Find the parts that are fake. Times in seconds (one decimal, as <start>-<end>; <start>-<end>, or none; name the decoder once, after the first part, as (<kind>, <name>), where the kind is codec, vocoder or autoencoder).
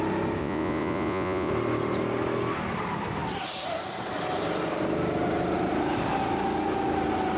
0.4-1.5 (vocoder, Vocos)